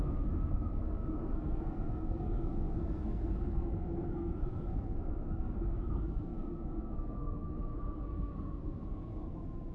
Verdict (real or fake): fake